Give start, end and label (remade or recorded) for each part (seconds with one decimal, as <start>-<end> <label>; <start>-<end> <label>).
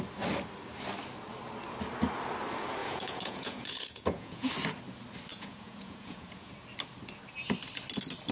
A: 0.0-2.8 recorded; 2.8-4.5 remade; 4.5-5.3 recorded; 5.3-6.5 remade; 6.5-8.3 recorded